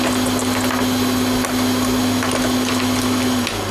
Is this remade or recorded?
recorded